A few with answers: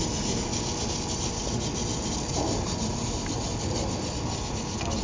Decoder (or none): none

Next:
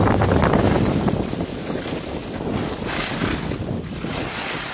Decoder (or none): none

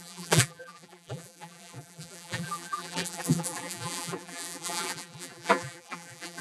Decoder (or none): vocoder, BigVGAN v2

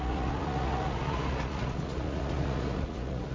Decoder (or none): vocoder, Vocos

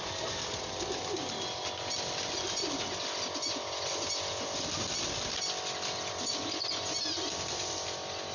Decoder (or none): none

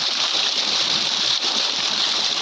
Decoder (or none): none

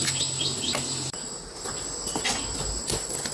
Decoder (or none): none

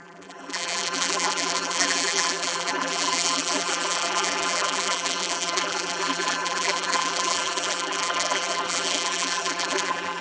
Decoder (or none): vocoder, BigVGAN v2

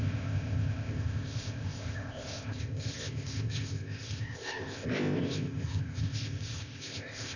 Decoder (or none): codec, ZipCodec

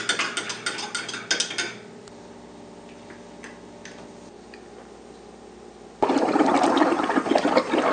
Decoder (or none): none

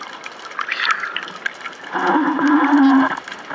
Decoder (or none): none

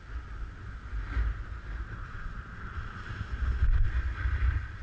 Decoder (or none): none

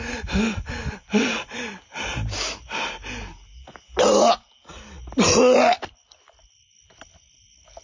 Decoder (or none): none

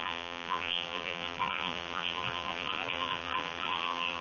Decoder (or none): vocoder, BigVGAN v2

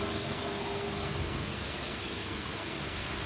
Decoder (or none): codec, SNAC